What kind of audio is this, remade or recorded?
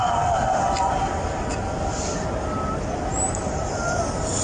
recorded